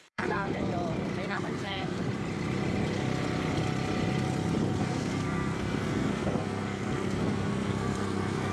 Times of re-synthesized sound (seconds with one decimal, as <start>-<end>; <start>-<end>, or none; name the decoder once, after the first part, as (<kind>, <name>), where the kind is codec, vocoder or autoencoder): 0.0-0.7 (codec, SNAC); 1.3-2.0; 4.8-8.5